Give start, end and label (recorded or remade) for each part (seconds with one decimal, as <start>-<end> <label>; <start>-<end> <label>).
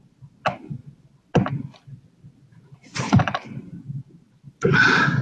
0.0-2.5 recorded; 2.5-3.6 remade; 3.6-5.2 recorded